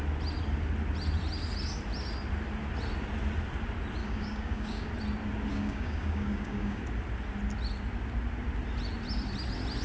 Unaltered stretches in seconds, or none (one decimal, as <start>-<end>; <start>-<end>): 0.0-4.0; 4.9-5.5; 6.8-9.8